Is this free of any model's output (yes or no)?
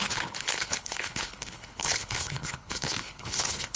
no